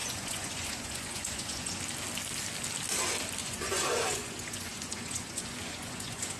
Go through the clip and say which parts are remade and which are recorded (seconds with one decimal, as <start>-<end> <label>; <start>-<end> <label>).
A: 0.0-1.8 remade; 1.8-3.4 recorded; 3.4-6.4 remade